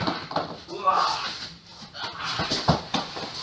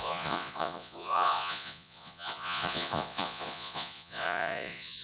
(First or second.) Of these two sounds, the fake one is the second